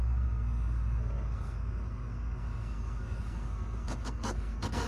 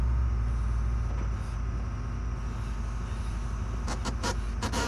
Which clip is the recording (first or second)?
second